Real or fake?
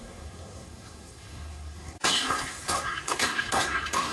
fake